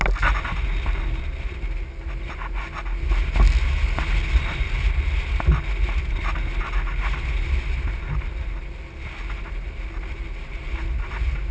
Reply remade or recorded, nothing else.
recorded